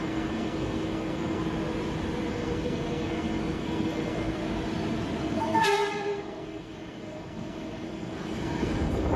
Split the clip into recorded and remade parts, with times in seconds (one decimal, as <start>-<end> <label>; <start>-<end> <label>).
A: 0.0-1.4 remade; 1.4-2.3 recorded; 2.3-4.4 remade; 4.4-5.2 recorded; 5.2-9.2 remade